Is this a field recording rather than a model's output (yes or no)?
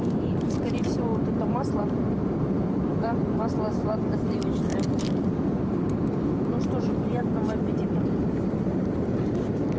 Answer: no